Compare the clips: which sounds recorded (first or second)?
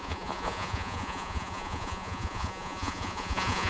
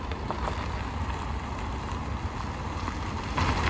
second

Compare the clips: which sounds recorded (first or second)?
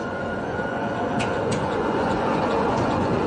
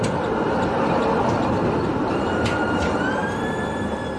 second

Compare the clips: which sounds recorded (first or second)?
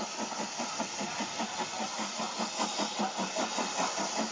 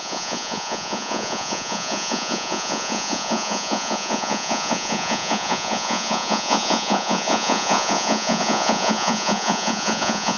first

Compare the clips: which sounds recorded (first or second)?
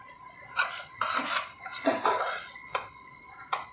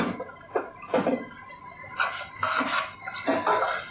second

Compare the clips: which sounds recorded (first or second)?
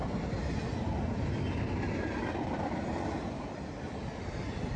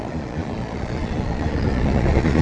first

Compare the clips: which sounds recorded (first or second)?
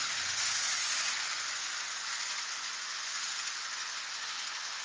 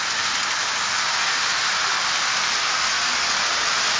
second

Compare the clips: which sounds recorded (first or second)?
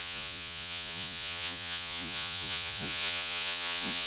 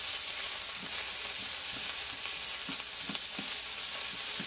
second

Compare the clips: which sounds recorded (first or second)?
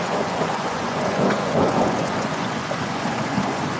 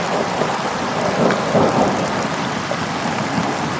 second